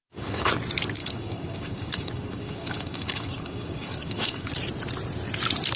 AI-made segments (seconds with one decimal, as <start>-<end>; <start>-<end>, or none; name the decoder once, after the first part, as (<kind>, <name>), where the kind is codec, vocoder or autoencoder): 0.0-0.5 (codec, DAC); 1.0-4.5